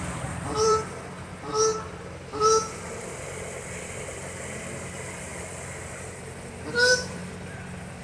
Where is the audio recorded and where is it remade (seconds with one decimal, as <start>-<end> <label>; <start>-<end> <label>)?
0.0-7.2 remade; 7.2-8.0 recorded